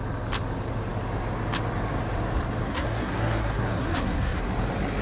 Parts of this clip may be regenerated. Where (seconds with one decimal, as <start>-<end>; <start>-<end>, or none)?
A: 2.6-4.5

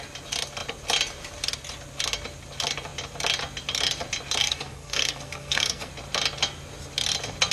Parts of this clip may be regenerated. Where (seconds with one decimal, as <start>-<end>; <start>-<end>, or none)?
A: 4.4-5.9

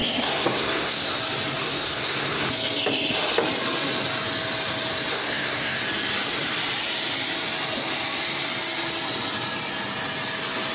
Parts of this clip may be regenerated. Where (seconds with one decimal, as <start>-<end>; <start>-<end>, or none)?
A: 0.0-1.2; 1.6-2.5; 5.1-5.8